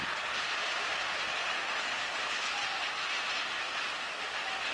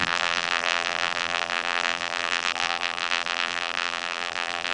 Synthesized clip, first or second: second